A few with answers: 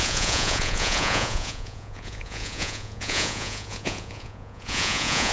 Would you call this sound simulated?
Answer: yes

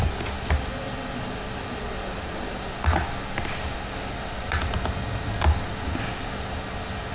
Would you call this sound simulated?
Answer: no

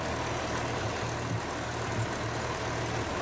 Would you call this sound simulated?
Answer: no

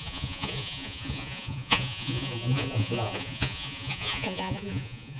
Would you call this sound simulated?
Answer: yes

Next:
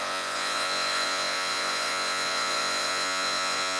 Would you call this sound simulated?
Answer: yes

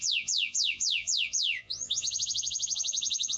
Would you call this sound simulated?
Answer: yes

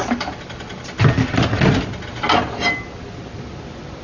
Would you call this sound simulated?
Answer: no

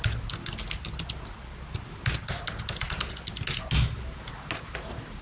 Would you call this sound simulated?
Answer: no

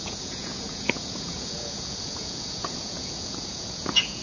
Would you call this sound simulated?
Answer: yes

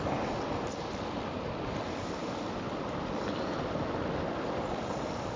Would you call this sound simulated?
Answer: no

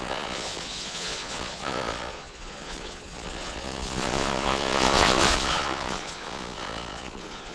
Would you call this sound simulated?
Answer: yes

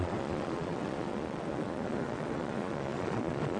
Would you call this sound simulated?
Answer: yes